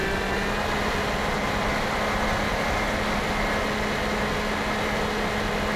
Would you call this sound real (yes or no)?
yes